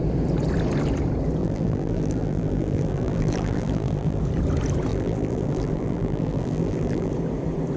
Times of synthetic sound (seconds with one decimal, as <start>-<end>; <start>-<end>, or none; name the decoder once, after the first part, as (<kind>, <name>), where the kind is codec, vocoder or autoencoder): 1.4-4.2 (vocoder, BigVGAN v2); 4.9-7.1